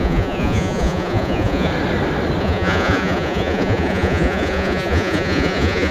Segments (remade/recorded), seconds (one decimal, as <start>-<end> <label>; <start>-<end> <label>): 0.0-1.7 remade; 1.7-2.4 recorded; 2.4-5.9 remade